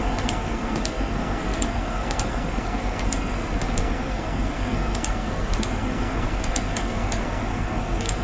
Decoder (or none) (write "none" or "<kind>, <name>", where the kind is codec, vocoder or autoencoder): codec, SNAC